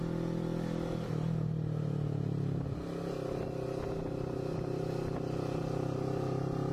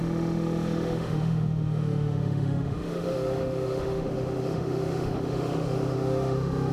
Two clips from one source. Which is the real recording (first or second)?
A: first